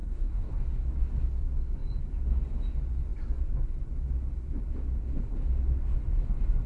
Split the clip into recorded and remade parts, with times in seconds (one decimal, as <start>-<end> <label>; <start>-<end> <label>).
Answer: 0.0-0.5 remade; 0.5-6.7 recorded